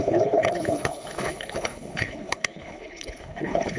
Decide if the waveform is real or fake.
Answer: fake